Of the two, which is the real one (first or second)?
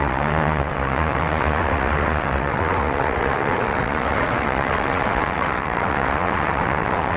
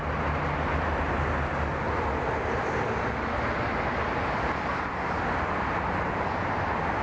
second